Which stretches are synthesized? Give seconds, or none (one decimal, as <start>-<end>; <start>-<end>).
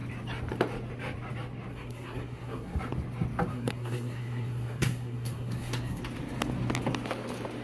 1.7-2.8; 3.5-6.0